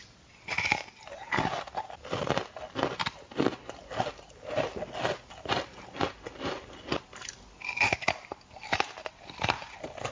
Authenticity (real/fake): real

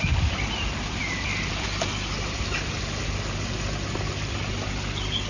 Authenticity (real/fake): real